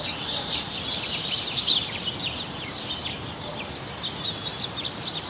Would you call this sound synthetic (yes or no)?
no